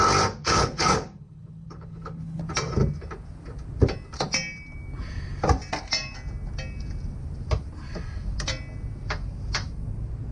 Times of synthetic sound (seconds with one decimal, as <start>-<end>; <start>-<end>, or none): 0.4-2.4